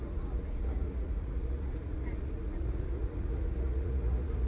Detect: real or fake fake